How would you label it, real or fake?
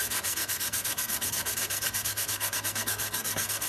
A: fake